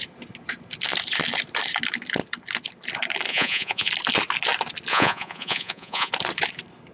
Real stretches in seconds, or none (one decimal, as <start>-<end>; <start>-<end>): 0.0-3.3; 3.9-4.9; 6.1-6.9